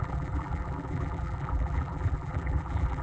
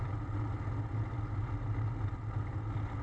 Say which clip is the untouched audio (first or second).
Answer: second